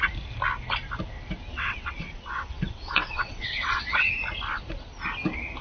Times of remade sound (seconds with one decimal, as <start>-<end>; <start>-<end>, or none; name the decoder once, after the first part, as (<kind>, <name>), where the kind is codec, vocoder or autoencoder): 1.5-4.1 (vocoder, WaveNeXt)